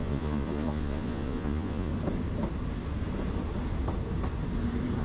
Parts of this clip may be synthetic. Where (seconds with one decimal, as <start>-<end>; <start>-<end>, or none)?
0.0-1.9